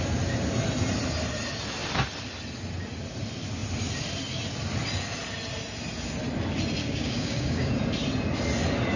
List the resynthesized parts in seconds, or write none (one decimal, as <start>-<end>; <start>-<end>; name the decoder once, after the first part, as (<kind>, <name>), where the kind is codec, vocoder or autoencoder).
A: 6.8-7.7 (codec, DAC)